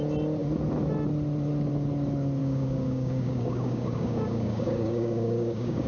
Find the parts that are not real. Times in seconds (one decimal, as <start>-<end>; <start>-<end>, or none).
2.4-5.9